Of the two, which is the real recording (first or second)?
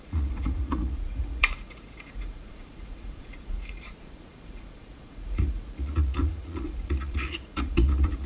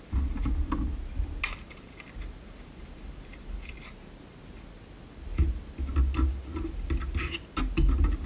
second